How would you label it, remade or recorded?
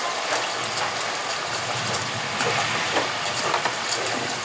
recorded